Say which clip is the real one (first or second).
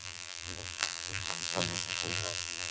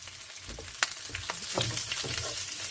second